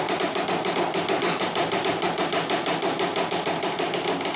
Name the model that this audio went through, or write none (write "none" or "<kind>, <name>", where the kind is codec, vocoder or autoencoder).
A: none